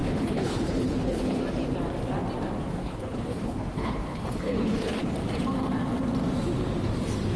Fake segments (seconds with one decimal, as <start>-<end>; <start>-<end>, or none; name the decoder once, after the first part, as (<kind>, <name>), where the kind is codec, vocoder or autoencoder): 0.0-1.4 (codec, HILCodec); 2.7-5.1